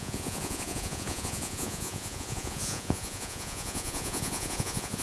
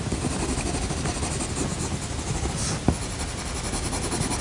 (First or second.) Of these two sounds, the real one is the second